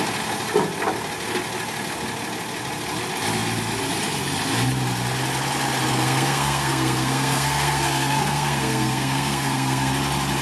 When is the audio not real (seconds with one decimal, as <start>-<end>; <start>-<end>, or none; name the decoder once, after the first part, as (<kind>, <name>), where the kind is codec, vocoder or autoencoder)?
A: 5.9-9.9 (codec, SNAC)